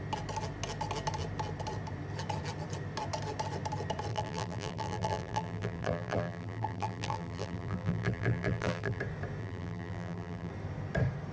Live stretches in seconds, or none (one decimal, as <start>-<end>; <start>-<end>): 0.0-4.1; 9.0-9.4; 10.5-11.3